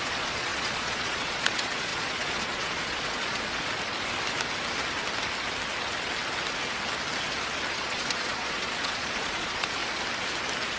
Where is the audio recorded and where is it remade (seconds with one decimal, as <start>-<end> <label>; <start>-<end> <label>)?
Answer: 0.0-3.7 remade; 3.7-7.7 recorded; 7.7-9.8 remade; 9.8-10.8 recorded